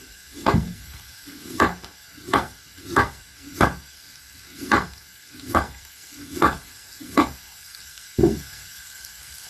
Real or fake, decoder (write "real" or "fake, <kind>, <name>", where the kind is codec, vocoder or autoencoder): fake, codec, SNAC